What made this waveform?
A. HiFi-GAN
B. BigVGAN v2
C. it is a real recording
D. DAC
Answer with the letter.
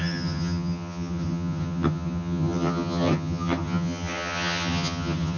A